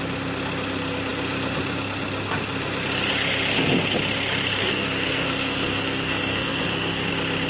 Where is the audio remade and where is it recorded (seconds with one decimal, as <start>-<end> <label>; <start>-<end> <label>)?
0.0-4.6 recorded; 4.6-7.1 remade; 7.1-7.5 recorded